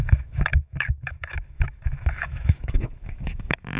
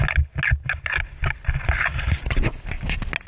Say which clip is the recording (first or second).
second